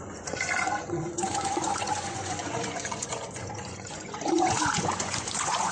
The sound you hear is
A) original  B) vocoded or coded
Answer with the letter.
B